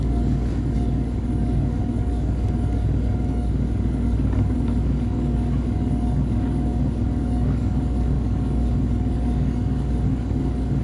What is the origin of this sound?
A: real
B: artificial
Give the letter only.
B